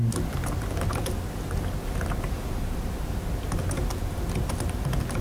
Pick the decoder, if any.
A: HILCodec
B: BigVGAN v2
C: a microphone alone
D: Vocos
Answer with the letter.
C